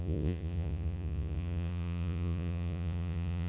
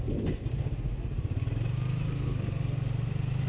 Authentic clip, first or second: second